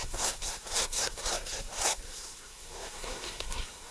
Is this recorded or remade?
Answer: remade